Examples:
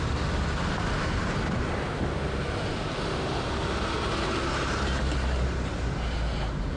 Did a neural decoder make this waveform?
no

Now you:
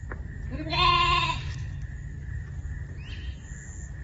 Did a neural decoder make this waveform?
no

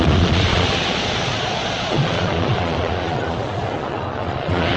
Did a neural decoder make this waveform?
yes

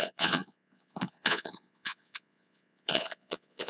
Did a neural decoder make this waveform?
yes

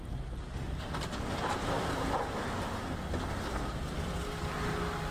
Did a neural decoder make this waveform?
no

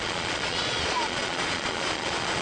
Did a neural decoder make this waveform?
yes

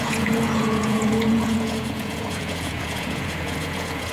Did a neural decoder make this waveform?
yes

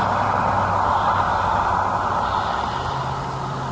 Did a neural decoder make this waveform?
no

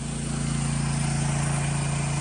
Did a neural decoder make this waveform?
no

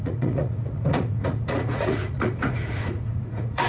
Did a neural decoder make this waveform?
yes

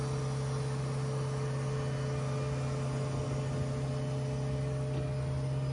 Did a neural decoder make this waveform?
no